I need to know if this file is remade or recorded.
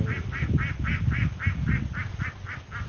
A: recorded